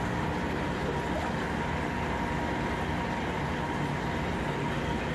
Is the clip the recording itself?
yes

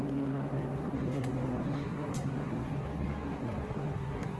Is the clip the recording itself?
no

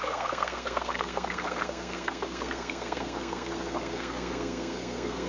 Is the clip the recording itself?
no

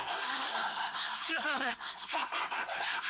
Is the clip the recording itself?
no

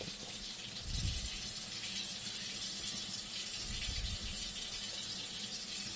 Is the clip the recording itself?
yes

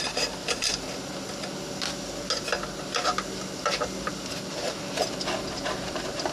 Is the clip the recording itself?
yes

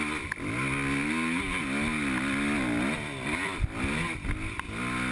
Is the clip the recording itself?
yes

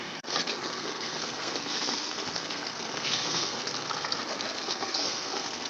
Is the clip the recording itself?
no